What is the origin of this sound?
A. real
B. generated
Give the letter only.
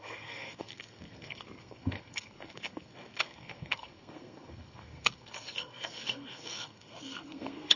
B